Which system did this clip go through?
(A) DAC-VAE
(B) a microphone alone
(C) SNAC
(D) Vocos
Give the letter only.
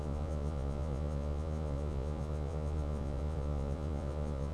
D